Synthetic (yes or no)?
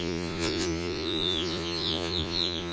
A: yes